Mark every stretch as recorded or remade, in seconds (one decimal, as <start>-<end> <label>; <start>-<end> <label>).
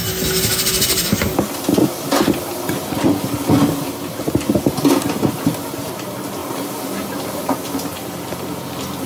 0.0-9.1 recorded